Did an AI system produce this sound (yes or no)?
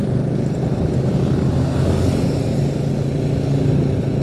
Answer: no